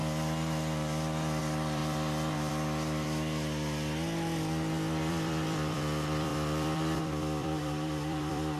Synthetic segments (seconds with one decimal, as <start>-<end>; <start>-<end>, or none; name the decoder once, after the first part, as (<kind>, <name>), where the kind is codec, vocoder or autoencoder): 1.4-1.8 (vocoder, BigVGAN v2); 5.1-8.6